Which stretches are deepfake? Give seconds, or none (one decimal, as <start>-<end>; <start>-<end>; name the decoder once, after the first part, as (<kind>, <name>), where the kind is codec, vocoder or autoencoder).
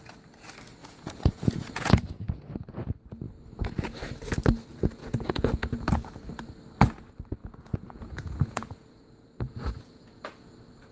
0.8-2.9 (vocoder, Vocos); 5.0-5.7; 7.4-10.5